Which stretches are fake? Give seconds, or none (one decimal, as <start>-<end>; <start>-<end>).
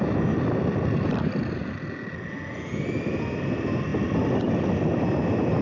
none